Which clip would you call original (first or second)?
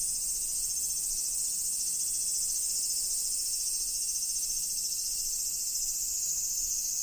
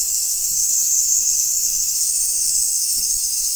first